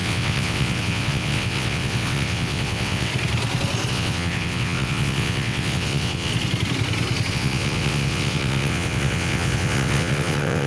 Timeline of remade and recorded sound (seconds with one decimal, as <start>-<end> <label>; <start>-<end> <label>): 0.0-3.1 remade; 3.1-3.9 recorded; 3.9-6.3 remade; 6.3-7.3 recorded; 7.3-10.7 remade